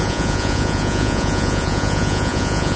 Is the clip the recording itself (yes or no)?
no